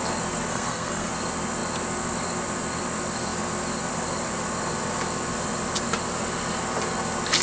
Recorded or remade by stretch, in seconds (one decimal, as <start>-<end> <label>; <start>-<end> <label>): 0.0-0.5 recorded; 0.5-1.1 remade; 1.1-7.4 recorded